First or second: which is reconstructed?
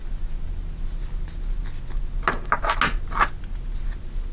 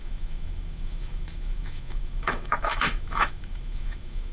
second